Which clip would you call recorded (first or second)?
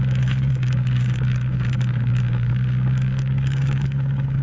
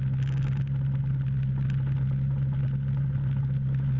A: second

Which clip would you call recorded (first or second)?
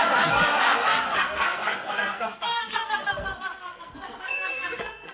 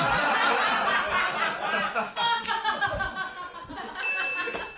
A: second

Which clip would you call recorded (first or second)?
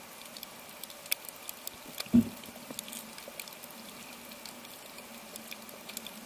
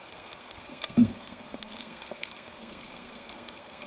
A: first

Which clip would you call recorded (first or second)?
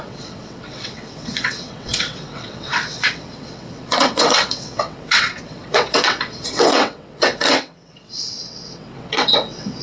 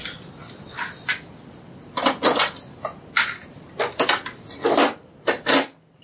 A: second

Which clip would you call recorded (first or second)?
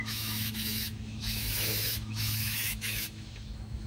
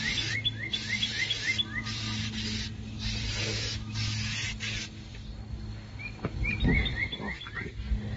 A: second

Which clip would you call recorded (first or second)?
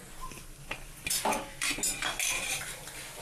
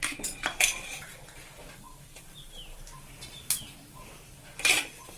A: first